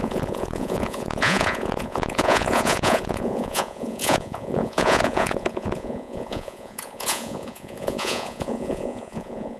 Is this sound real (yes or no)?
no